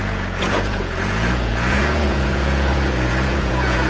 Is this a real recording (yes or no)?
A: no